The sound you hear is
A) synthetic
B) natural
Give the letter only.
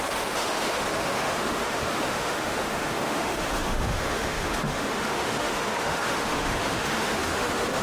A